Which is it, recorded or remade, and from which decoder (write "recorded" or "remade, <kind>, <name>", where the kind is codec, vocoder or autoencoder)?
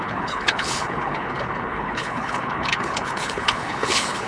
remade, codec, HILCodec